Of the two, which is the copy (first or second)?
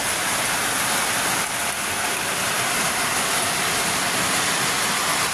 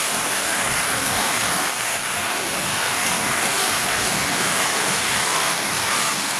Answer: second